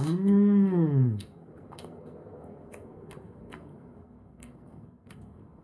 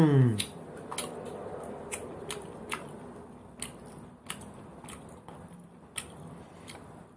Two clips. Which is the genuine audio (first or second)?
second